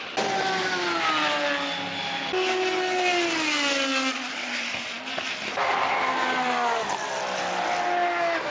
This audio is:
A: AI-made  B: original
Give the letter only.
B